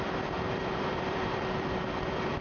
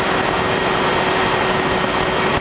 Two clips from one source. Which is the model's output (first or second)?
first